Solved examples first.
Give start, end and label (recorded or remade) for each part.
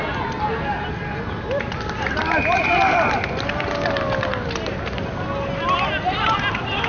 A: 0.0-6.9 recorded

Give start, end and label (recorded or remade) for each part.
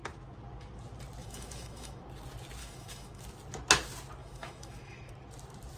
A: 0.0-1.2 recorded; 1.2-2.0 remade; 2.0-2.6 recorded; 2.6-3.2 remade; 3.2-4.2 recorded; 4.2-5.1 remade; 5.1-5.8 recorded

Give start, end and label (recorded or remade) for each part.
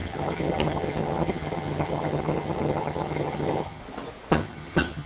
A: 0.0-3.8 remade; 3.8-4.3 recorded; 4.3-5.1 remade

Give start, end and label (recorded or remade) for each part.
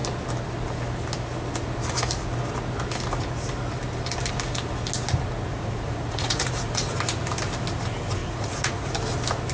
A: 0.0-5.5 recorded; 5.5-6.7 remade; 6.7-8.2 recorded; 8.2-8.9 remade; 8.9-9.5 recorded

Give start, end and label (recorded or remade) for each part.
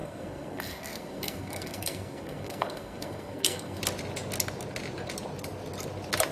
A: 0.0-3.8 remade; 3.8-6.3 recorded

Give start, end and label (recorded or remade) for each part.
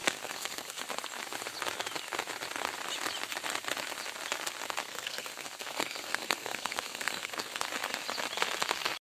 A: 0.0-0.8 remade; 0.8-4.8 recorded; 4.8-7.7 remade; 7.7-9.0 recorded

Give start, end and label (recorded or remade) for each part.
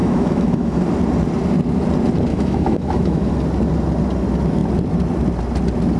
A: 0.0-0.8 remade; 0.8-2.3 recorded; 2.3-3.3 remade; 3.3-6.0 recorded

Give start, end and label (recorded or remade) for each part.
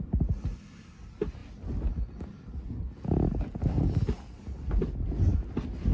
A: 0.0-5.9 recorded